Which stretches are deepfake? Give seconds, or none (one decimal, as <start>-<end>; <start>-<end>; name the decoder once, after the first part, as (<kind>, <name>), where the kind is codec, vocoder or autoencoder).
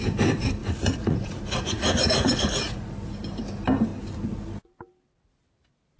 0.6-2.9 (vocoder, Vocos)